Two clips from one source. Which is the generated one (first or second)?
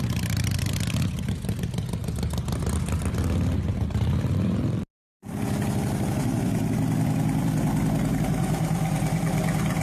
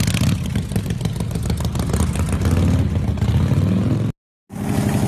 first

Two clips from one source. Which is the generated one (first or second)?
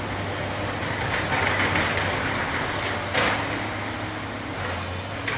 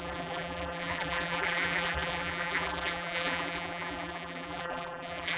second